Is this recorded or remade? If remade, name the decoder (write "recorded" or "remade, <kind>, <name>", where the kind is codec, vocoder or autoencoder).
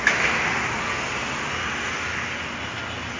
recorded